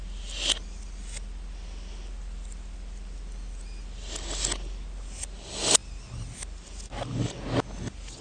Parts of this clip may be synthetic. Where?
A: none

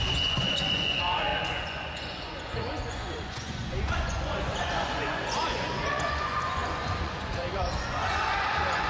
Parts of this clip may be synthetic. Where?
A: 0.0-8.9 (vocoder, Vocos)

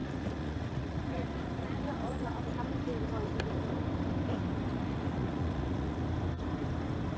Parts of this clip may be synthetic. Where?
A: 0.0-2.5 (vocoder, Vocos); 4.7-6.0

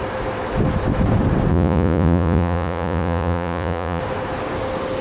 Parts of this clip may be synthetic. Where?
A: 1.5-4.0 (vocoder, Vocos)

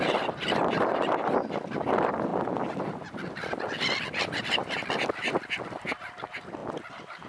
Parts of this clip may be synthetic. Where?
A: none

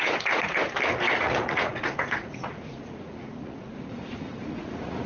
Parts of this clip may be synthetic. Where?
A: 0.0-0.6 (vocoder, Vocos); 1.2-5.1

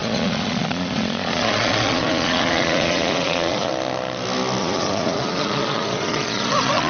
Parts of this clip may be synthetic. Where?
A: 0.0-3.7 (vocoder, Vocos); 4.6-6.9